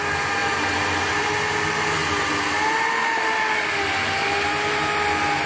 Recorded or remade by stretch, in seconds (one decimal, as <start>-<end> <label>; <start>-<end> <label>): 0.0-5.5 recorded